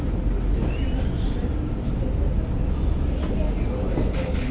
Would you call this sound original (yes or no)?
yes